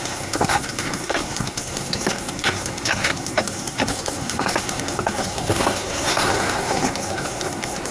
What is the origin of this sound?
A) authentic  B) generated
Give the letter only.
B